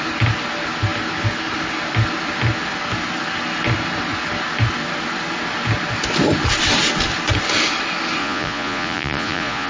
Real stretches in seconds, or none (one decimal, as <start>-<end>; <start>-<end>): 0.0-8.2